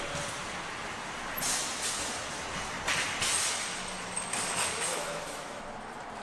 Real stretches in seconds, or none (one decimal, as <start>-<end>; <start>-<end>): 0.0-4.9; 5.6-6.2